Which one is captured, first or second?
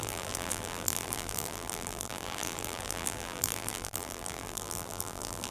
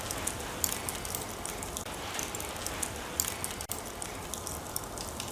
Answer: second